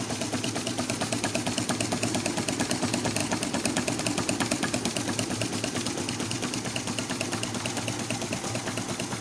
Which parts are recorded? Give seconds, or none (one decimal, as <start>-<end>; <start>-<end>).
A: 0.0-9.2

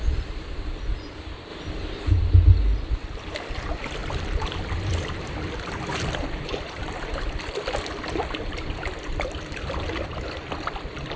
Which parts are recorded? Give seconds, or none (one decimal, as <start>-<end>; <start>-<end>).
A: 0.0-4.0; 6.8-11.2

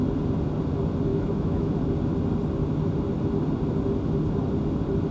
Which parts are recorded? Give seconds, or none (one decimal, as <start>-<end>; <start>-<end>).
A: 0.0-1.1; 1.7-5.1

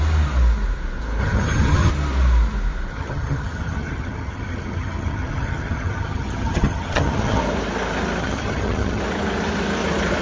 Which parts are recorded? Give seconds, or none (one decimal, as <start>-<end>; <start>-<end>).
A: 0.0-1.2; 1.9-2.9; 7.4-8.2; 9.0-10.2

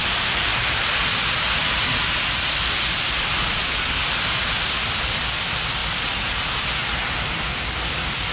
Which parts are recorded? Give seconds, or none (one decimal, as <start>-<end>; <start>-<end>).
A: 0.0-8.3

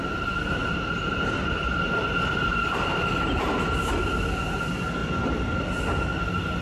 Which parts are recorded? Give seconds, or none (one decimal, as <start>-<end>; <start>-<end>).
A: 0.0-0.6; 4.0-6.6